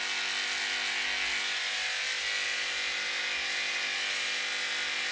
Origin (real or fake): real